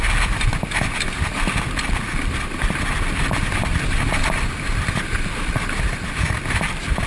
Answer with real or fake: real